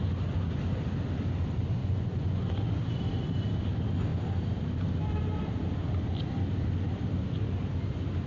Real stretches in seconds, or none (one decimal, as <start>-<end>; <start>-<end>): 0.0-1.8; 2.7-8.3